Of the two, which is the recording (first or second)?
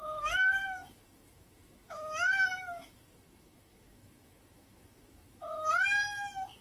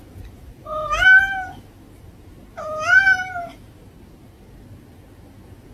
second